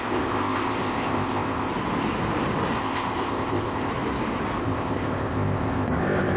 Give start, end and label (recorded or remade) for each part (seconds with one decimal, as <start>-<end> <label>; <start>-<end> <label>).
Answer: 0.0-1.7 remade; 1.7-2.8 recorded; 2.8-3.9 remade; 3.9-4.6 recorded; 4.6-6.4 remade